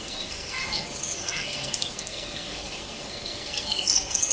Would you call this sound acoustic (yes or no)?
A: no